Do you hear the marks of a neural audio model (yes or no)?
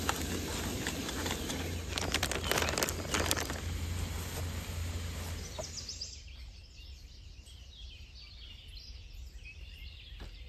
no